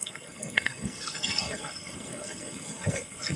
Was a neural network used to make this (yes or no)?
yes